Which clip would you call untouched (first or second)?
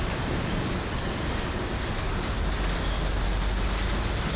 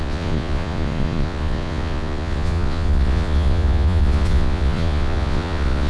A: first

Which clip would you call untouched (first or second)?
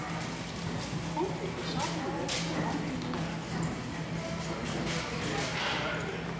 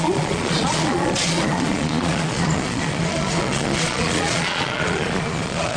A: first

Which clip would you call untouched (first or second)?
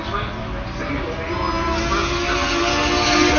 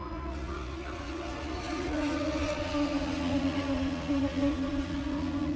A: first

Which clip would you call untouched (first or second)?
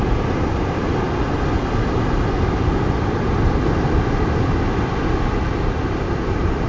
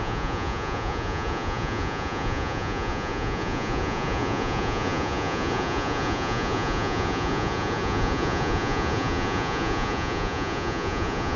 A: first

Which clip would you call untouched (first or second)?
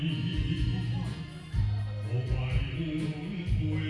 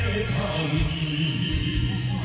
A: first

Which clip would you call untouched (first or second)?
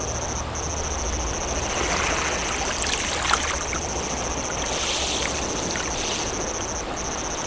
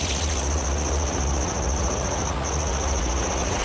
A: first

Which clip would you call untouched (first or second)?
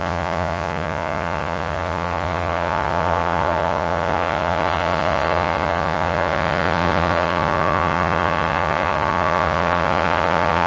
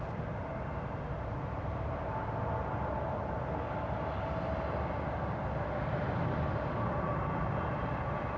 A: second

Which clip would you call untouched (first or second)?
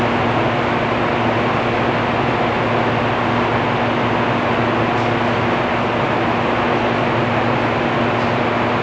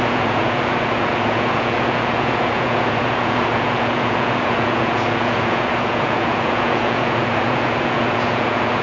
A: first